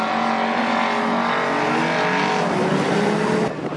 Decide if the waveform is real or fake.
real